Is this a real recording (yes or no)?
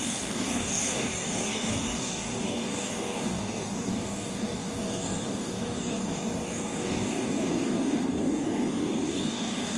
no